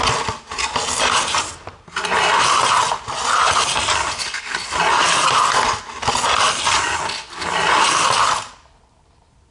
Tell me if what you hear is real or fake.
real